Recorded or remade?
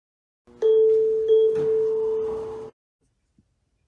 recorded